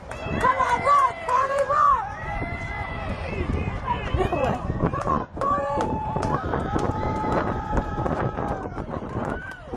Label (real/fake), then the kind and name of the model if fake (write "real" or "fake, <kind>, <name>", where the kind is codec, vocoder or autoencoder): fake, vocoder, Vocos